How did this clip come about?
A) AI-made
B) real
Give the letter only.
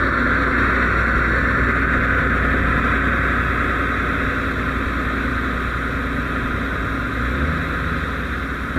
B